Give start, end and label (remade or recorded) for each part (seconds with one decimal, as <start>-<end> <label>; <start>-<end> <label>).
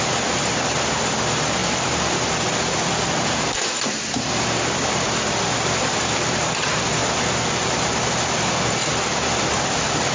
0.0-7.0 remade; 7.0-7.6 recorded; 7.6-8.8 remade; 8.8-9.4 recorded; 9.4-10.1 remade